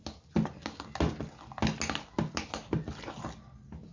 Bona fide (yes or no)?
yes